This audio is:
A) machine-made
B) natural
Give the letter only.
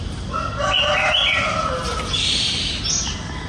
B